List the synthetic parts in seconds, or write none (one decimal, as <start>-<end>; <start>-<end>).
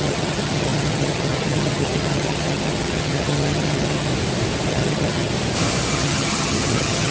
0.0-4.1; 4.7-5.3; 5.9-7.1